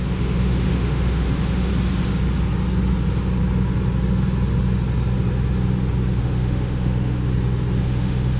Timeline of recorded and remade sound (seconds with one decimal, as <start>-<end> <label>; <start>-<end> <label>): 0.0-1.7 remade; 1.7-6.2 recorded; 6.2-7.2 remade; 7.2-7.8 recorded; 7.8-8.4 remade